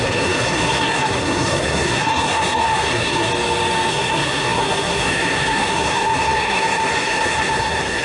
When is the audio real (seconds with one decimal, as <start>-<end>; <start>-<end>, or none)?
3.3-3.9